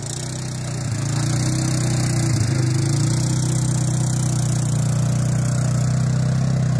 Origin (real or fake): real